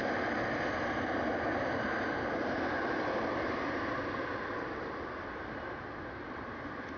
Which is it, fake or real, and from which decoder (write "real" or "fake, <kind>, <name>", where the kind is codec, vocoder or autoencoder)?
real